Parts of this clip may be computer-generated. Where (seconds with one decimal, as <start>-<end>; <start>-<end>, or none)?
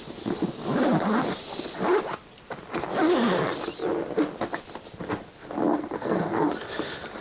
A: 5.7-6.5